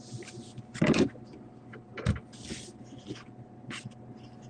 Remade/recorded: recorded